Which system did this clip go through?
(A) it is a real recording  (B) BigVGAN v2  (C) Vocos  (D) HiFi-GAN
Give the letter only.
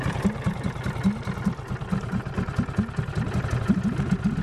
A